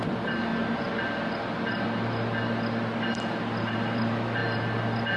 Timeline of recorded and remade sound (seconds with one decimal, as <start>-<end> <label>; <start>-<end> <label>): 0.0-0.5 remade; 0.5-3.6 recorded; 3.6-4.4 remade; 4.4-5.2 recorded